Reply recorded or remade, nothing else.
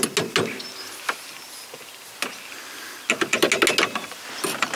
recorded